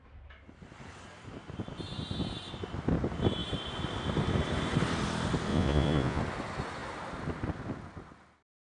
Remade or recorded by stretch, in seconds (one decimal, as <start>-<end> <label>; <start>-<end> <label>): 0.0-5.5 recorded; 5.5-6.2 remade; 6.2-8.7 recorded